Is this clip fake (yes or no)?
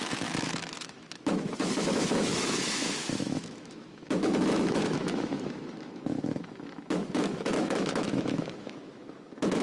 yes